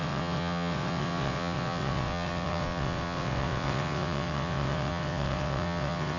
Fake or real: fake